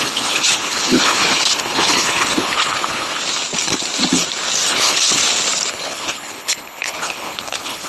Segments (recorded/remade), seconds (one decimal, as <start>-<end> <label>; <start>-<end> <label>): 0.0-3.2 remade; 3.2-4.7 recorded; 4.7-5.2 remade; 5.2-5.7 recorded; 5.7-7.9 remade

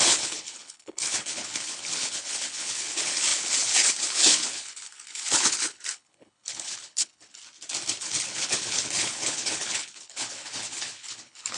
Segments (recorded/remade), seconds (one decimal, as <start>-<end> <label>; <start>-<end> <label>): 0.0-7.4 remade; 7.4-8.0 recorded; 8.0-11.6 remade

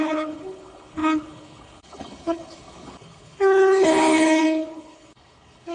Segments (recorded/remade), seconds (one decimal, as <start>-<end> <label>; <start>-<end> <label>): 0.0-5.7 remade

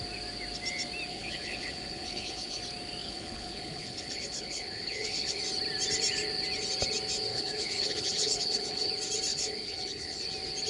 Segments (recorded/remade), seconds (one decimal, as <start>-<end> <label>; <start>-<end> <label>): 0.0-1.1 recorded; 1.1-2.6 remade; 2.6-3.0 recorded; 3.0-5.4 remade; 5.4-7.3 recorded; 7.3-8.9 remade; 8.9-9.3 recorded; 9.3-10.2 remade; 10.2-10.7 recorded

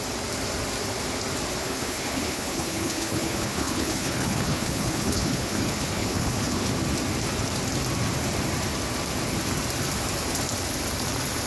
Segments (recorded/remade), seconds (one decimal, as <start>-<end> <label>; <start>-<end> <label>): 0.0-1.6 recorded; 1.6-6.7 remade; 6.7-11.5 recorded

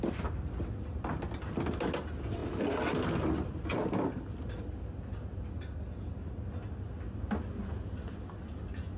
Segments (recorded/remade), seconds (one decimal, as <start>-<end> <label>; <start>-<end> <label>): 0.0-9.0 recorded

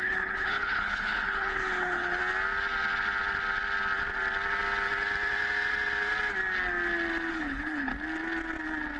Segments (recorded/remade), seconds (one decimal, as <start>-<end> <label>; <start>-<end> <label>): 0.0-2.2 remade; 2.2-7.3 recorded; 7.3-7.9 remade; 7.9-9.0 recorded